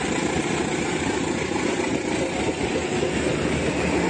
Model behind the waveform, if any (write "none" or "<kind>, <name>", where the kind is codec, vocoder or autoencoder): vocoder, BigVGAN v2